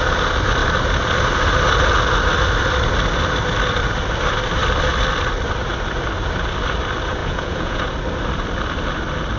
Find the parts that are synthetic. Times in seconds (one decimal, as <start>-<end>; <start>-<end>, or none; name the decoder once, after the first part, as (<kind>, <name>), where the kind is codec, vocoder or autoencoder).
7.2-7.9 (vocoder, Vocos)